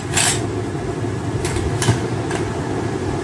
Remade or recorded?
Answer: recorded